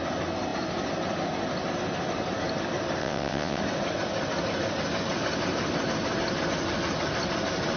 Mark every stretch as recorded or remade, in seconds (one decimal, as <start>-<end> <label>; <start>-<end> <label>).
0.0-3.0 recorded; 3.0-3.6 remade; 3.6-7.8 recorded